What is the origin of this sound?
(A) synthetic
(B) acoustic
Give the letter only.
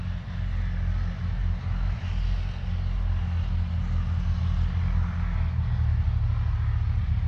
B